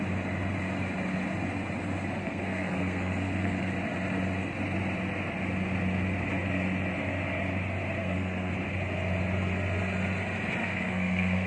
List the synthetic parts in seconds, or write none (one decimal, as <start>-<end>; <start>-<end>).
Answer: 2.2-3.7; 8.0-8.5; 10.6-11.5